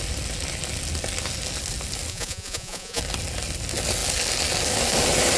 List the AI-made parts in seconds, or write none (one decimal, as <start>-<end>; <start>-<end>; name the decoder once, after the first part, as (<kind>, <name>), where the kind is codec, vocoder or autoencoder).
2.1-3.0 (vocoder, Vocos)